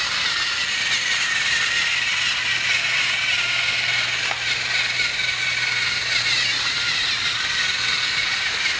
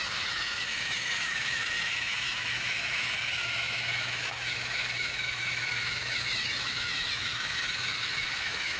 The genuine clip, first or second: first